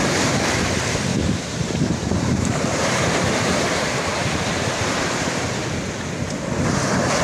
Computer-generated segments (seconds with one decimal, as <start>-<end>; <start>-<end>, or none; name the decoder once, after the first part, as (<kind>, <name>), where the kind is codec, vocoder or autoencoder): 1.1-5.4 (vocoder, BigVGAN v2)